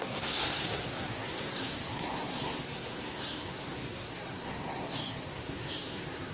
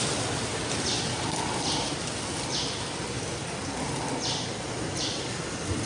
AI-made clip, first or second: first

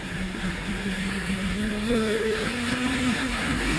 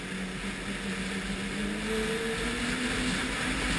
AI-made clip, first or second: first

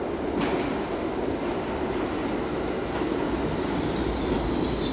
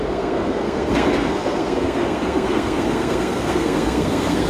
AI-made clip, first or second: second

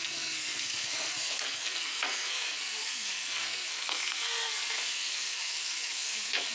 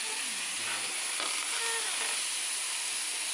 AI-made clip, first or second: first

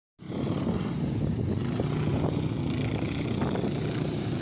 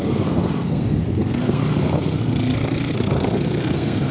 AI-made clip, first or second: second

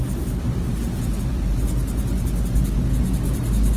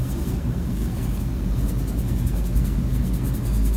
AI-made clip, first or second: second